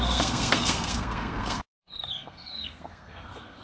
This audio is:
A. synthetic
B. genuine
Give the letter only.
A